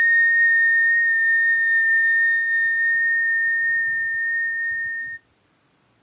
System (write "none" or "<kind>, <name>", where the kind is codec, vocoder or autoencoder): none